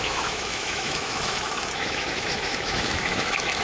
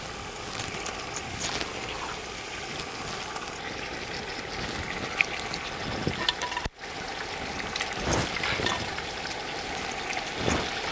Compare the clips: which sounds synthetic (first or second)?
first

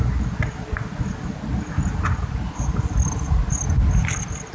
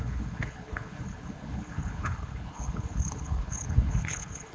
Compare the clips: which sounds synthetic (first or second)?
second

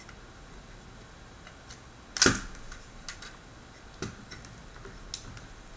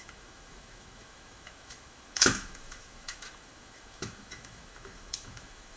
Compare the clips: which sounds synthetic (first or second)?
second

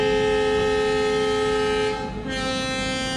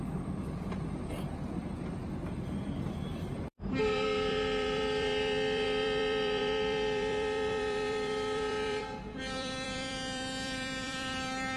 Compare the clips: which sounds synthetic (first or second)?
second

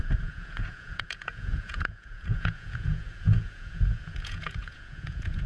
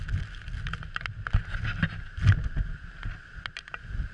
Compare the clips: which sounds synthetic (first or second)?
first